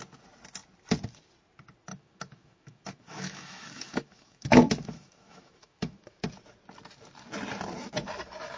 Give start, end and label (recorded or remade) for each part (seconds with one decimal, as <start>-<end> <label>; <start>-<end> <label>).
0.0-1.9 recorded; 1.9-6.2 remade; 6.2-8.6 recorded